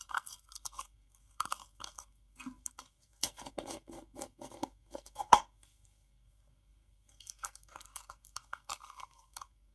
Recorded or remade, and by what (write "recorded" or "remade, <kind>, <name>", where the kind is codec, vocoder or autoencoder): remade, codec, SNAC